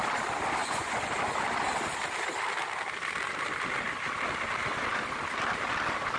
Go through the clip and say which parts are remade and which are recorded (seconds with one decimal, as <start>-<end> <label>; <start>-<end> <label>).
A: 0.0-0.6 recorded; 0.6-1.1 remade; 1.1-6.2 recorded